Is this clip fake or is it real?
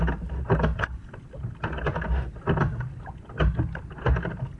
real